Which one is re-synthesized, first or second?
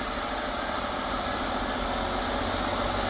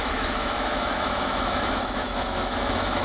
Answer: second